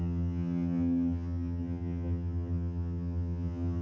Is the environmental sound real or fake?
fake